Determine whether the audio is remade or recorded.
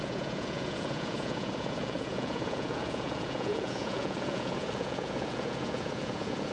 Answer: remade